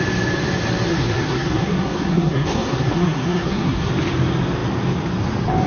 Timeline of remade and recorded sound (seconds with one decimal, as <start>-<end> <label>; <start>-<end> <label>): 0.0-0.9 recorded; 0.9-3.9 remade; 3.9-5.7 recorded